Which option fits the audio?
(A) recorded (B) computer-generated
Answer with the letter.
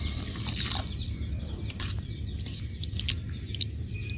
A